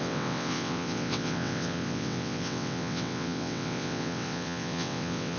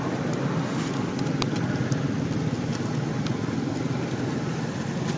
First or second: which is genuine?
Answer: second